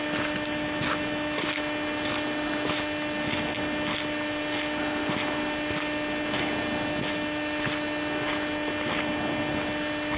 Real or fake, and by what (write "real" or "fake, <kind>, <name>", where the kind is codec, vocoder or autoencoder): real